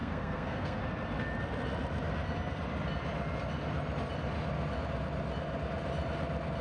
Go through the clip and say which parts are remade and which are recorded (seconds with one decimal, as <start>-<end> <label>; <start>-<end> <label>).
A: 0.0-0.8 remade; 0.8-6.6 recorded